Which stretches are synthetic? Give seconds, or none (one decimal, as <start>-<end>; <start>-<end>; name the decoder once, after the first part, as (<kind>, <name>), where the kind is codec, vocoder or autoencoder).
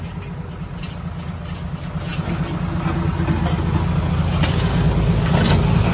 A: none